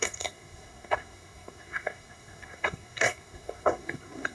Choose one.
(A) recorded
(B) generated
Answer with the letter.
B